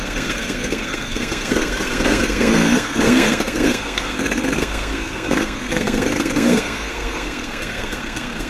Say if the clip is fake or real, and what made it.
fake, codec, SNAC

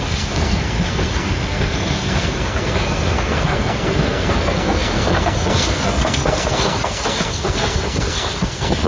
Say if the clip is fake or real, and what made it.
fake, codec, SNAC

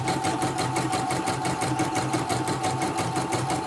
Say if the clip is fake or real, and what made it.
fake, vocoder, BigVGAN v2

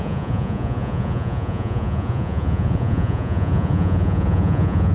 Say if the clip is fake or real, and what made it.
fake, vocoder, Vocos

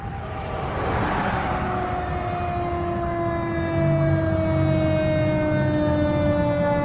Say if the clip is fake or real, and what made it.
real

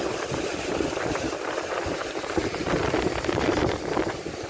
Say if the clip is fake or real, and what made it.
fake, vocoder, BigVGAN v2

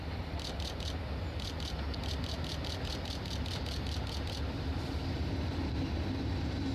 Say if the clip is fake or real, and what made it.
real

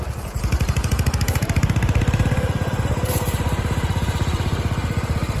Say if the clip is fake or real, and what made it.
fake, vocoder, BigVGAN v2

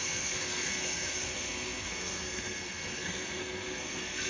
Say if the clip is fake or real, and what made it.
fake, codec, SNAC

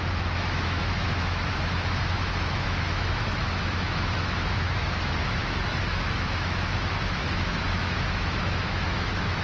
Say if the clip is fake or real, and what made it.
fake, autoencoder, DAC-VAE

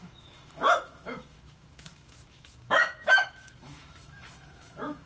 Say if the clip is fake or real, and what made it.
fake, autoencoder, DAC-VAE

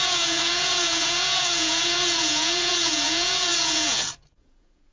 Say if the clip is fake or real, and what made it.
fake, vocoder, Vocos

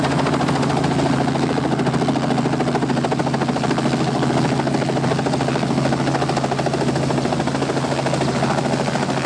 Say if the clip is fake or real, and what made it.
real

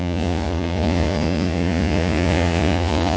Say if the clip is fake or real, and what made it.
fake, vocoder, Vocos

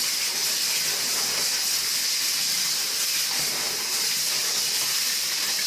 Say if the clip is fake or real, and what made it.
real